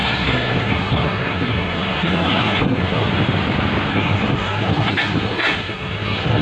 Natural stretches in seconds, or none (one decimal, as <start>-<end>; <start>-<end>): 3.1-3.9